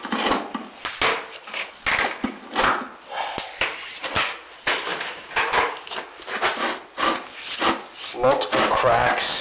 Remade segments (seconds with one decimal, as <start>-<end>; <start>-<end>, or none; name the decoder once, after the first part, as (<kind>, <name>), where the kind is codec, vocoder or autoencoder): none